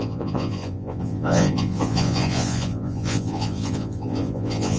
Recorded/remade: remade